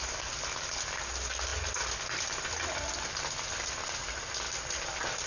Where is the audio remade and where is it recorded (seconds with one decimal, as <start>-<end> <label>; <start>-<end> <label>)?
0.0-5.3 recorded